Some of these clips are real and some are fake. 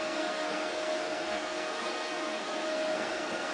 fake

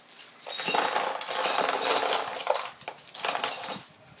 real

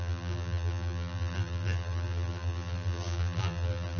fake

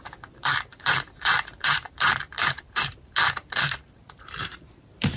fake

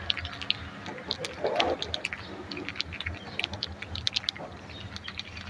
real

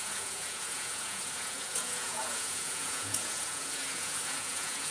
fake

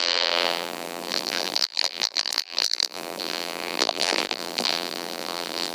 fake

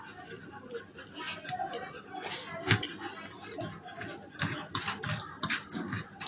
real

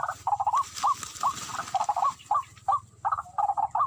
real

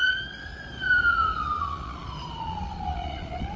fake